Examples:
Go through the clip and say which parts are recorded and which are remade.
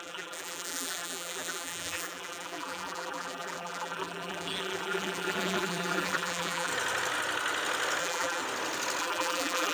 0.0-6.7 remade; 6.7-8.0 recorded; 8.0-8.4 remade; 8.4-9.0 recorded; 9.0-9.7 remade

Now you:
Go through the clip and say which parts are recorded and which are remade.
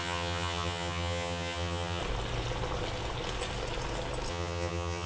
0.0-2.0 remade; 2.0-4.3 recorded; 4.3-5.1 remade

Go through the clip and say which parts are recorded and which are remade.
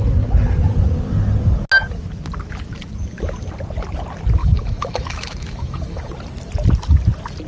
0.0-4.4 recorded; 4.4-6.1 remade; 6.1-7.5 recorded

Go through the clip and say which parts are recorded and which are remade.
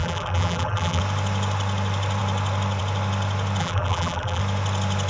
0.0-1.0 remade; 1.0-3.6 recorded; 3.6-4.4 remade; 4.4-5.1 recorded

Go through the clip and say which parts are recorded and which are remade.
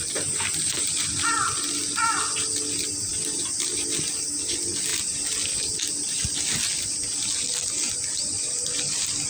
0.0-9.3 recorded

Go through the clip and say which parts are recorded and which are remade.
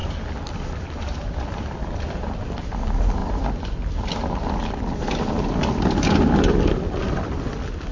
0.0-7.9 recorded